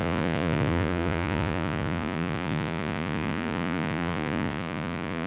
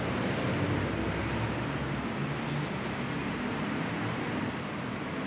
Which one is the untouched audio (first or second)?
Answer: second